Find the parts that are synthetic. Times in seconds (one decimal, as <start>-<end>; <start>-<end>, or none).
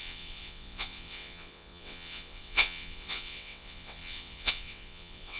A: 0.0-5.4